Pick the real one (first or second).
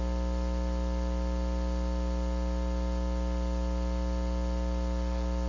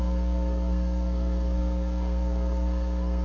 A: first